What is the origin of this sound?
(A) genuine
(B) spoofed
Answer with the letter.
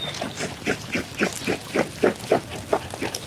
A